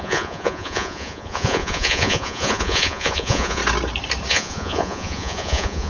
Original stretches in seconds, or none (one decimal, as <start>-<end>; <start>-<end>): 3.6-4.3

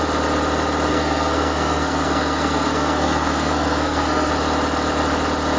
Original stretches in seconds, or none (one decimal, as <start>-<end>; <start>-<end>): 0.0-0.9; 4.3-5.6

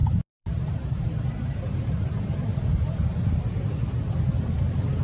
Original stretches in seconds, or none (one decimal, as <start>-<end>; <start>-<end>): 2.9-5.0